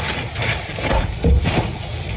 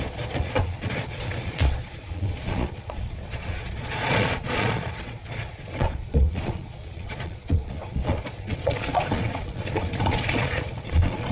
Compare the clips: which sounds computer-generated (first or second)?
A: second